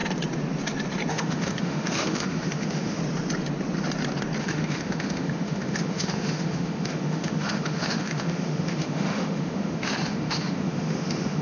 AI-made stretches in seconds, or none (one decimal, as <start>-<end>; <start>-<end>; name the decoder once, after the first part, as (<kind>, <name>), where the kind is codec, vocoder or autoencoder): 1.1-3.0 (autoencoder, DAC-VAE); 4.4-11.4